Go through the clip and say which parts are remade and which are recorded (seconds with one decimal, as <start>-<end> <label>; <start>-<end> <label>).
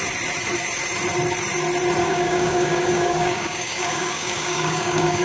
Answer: 0.0-2.0 recorded; 2.0-5.2 remade